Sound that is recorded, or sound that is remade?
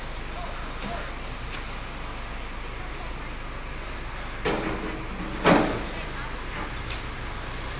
recorded